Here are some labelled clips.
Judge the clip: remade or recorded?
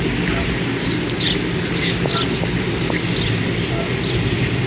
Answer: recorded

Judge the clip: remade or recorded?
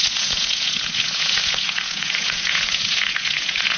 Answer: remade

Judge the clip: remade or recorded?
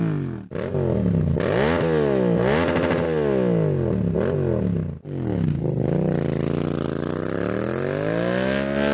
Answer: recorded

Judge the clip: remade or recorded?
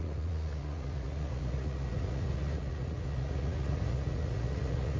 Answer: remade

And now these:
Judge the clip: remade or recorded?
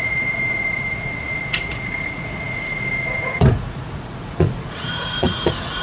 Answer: remade